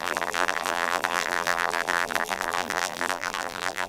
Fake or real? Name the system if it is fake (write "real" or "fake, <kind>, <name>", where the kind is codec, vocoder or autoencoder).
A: fake, vocoder, BigVGAN v2